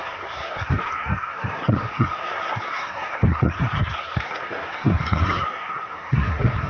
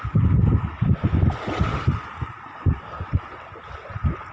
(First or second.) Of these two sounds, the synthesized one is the first